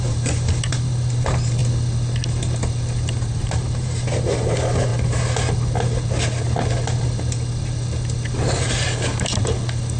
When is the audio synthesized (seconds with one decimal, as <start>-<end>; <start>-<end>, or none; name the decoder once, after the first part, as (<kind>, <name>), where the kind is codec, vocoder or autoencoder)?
0.0-1.6 (vocoder, BigVGAN v2); 3.1-4.9